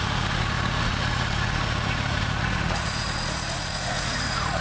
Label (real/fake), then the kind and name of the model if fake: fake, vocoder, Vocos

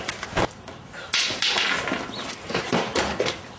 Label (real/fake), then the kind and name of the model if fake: real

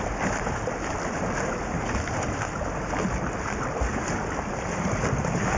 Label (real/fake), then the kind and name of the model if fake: real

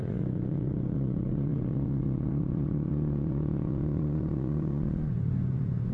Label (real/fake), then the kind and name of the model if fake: fake, vocoder, Vocos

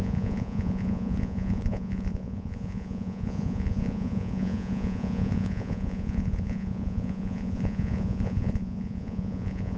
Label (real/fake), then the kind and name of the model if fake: fake, vocoder, Vocos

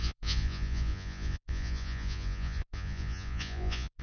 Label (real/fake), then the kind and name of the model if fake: fake, vocoder, Vocos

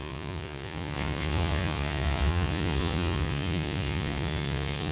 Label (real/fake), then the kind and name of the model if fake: fake, vocoder, Vocos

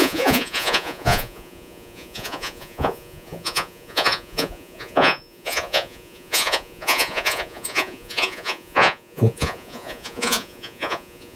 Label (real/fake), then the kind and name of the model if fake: fake, vocoder, Vocos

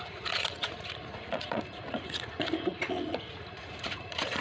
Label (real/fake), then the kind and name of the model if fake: fake, vocoder, Vocos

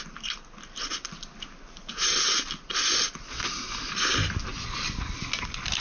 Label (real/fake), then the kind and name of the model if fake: real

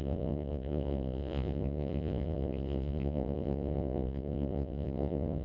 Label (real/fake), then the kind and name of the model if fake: fake, vocoder, Vocos